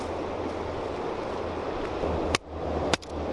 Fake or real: real